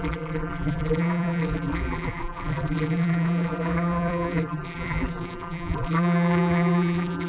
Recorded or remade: remade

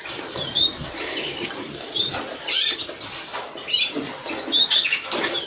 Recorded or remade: remade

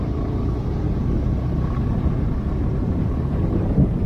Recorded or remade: remade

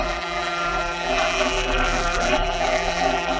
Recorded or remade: remade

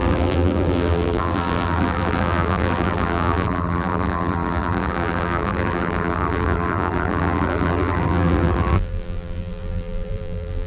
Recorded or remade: remade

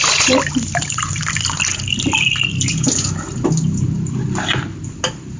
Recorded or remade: recorded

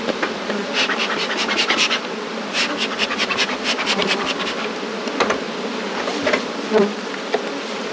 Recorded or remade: remade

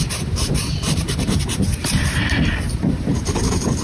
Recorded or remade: remade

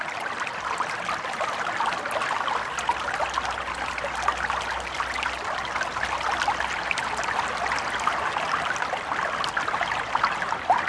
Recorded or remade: recorded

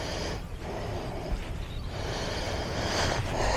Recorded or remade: remade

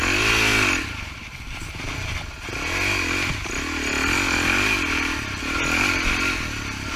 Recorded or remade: recorded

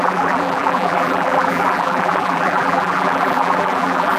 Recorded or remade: remade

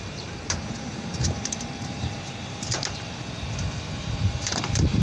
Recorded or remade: remade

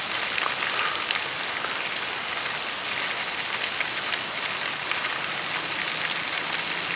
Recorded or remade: recorded